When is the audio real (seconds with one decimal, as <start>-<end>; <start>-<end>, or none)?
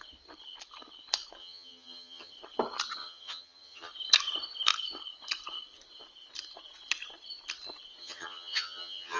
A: 0.0-1.4; 2.3-3.0; 3.9-8.0